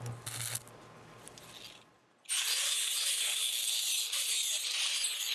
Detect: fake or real real